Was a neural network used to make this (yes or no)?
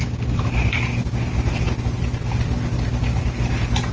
no